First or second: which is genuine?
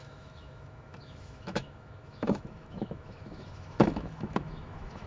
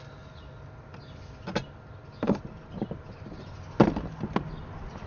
second